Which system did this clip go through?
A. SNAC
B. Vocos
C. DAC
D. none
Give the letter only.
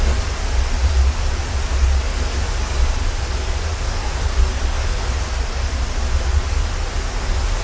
D